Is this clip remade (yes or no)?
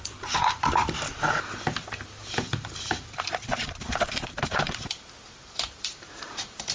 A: yes